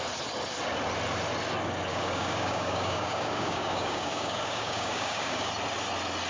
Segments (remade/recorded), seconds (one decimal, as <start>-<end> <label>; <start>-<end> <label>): 0.0-1.9 recorded; 1.9-5.5 remade; 5.5-6.3 recorded